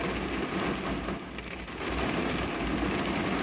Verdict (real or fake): real